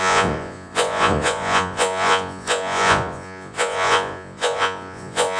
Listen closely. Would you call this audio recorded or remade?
remade